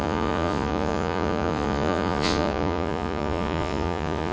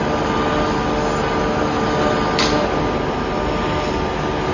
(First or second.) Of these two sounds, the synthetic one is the first